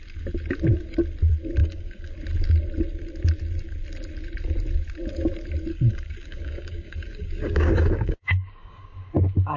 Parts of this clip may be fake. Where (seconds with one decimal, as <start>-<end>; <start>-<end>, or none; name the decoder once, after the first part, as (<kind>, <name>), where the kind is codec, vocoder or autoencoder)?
1.6-2.1 (codec, DAC); 5.7-9.1